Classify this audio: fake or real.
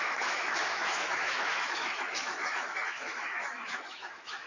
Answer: fake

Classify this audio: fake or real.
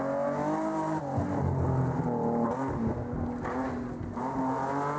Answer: real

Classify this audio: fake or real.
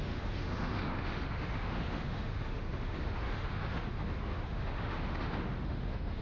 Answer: fake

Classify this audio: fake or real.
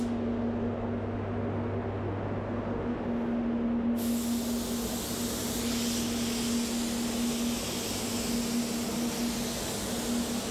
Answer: real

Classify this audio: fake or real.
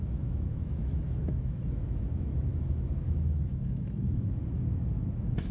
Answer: fake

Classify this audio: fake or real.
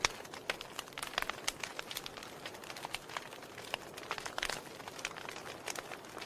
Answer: real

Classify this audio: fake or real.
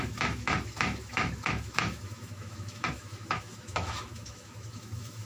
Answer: fake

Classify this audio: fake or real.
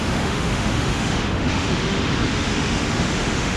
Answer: fake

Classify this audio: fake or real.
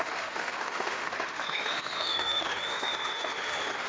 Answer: fake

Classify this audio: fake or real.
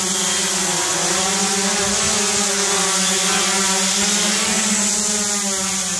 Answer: real